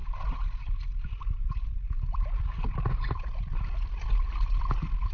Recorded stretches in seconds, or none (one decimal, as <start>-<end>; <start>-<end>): 0.0-5.1